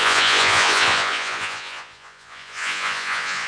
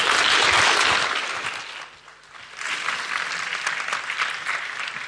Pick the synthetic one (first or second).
first